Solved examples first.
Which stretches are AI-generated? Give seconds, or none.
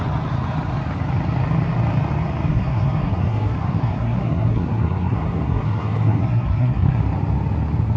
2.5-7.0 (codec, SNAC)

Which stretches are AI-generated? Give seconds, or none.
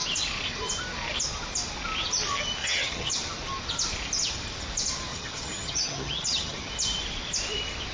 2.6-3.1 (vocoder, HiFi-GAN); 5.1-6.7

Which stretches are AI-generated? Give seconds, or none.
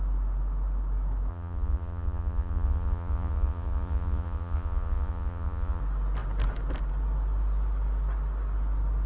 1.3-5.8 (vocoder, Vocos)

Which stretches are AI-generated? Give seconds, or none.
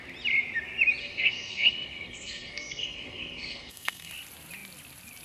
1.0-4.1 (codec, SNAC)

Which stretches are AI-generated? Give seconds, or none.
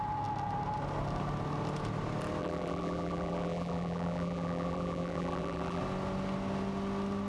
2.4-5.8 (vocoder, BigVGAN v2)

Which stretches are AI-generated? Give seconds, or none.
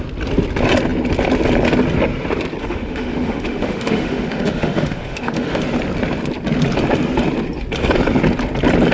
2.6-5.6 (autoencoder, DAC-VAE)